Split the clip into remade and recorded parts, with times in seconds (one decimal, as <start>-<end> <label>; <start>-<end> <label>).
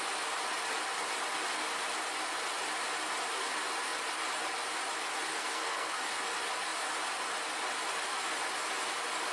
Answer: 0.0-5.3 recorded; 5.3-5.9 remade; 5.9-9.3 recorded